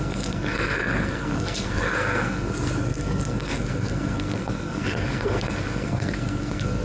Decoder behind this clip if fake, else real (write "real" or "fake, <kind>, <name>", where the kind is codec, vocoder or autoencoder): fake, codec, SNAC